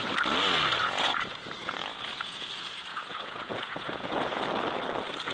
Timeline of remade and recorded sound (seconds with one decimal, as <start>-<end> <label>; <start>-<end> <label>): 0.0-0.8 recorded; 0.8-2.5 remade; 2.5-2.9 recorded; 2.9-4.4 remade; 4.4-5.3 recorded